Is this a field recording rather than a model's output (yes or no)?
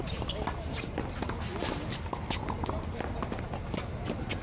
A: yes